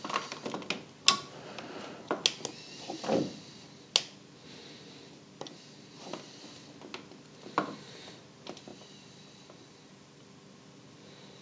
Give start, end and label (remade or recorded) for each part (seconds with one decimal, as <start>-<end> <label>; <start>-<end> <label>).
0.0-11.4 recorded